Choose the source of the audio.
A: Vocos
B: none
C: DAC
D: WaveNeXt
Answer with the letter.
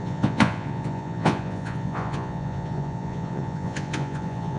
A